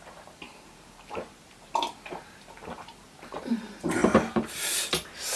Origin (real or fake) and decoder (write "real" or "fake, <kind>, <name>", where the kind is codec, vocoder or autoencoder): fake, vocoder, BigVGAN v2